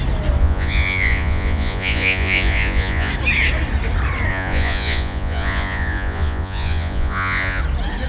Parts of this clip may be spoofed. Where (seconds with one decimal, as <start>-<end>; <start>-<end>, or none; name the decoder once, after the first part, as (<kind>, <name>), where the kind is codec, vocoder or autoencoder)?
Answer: 0.4-3.1 (vocoder, Vocos); 4.3-7.6